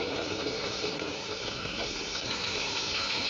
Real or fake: fake